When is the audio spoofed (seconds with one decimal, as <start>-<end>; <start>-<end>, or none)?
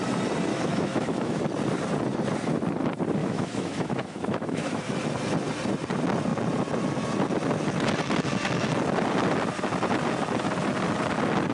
0.5-1.4; 3.2-4.8